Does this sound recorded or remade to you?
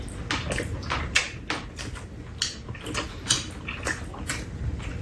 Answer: recorded